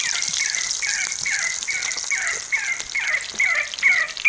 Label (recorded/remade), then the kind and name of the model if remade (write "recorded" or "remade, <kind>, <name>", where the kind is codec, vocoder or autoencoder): recorded